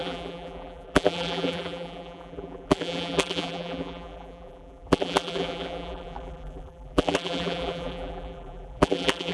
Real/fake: fake